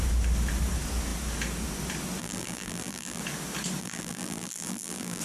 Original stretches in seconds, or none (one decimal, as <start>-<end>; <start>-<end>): 0.0-2.2; 3.2-3.8